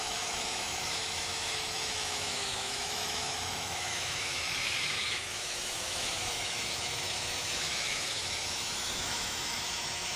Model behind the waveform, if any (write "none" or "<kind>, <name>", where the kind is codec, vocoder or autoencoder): autoencoder, DAC-VAE